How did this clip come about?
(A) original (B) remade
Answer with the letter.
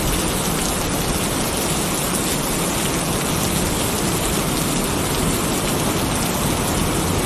A